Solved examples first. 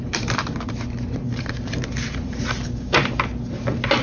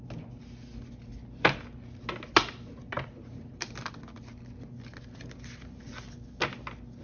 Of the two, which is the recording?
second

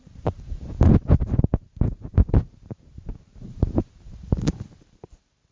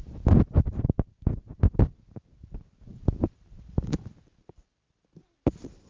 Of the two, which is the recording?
second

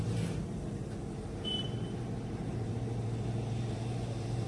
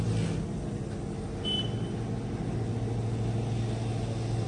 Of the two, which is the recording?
second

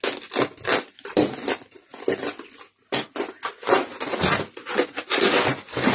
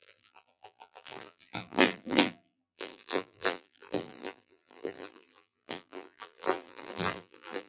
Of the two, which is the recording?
first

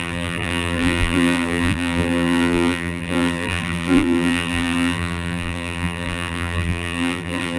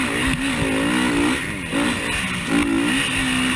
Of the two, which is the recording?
second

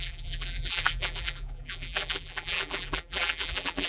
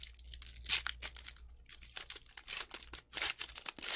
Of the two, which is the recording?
second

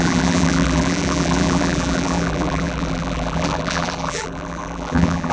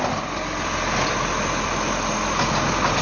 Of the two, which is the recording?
second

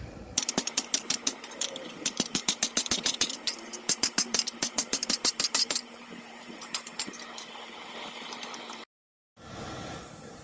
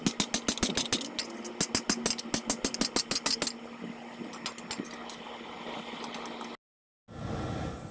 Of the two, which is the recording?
second